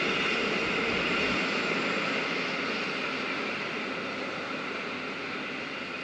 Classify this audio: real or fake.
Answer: real